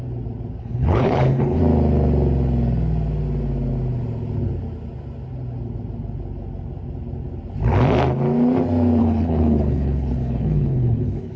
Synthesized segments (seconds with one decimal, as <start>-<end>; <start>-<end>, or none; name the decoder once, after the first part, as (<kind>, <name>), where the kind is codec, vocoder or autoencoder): 0.6-1.6 (codec, HILCodec); 9.0-11.4